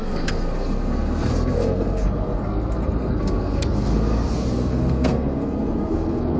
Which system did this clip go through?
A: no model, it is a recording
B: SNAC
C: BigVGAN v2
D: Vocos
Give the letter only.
B